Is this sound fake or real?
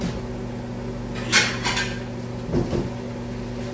real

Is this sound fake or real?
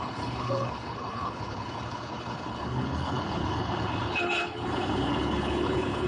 fake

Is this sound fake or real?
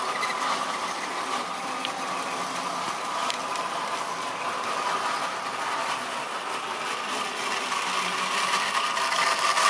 real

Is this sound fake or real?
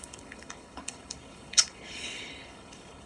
fake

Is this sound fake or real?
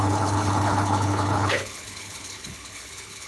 fake